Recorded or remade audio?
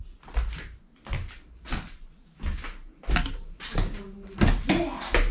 recorded